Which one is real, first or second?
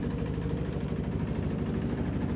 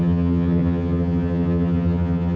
first